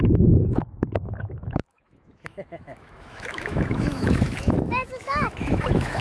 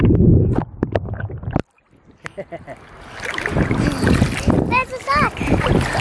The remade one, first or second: first